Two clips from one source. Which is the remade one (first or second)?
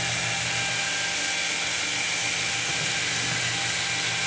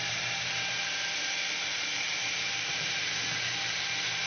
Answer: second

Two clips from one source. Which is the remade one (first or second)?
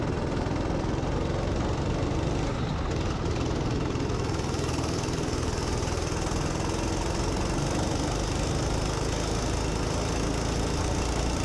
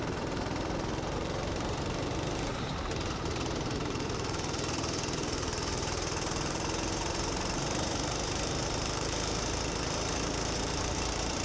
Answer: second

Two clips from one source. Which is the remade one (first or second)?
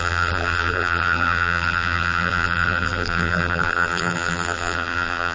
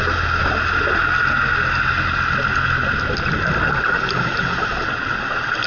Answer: first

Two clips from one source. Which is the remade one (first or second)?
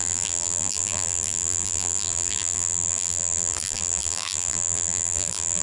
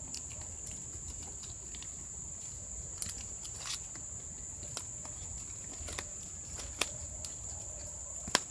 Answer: first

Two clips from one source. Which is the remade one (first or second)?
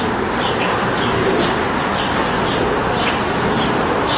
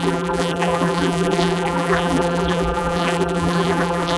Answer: second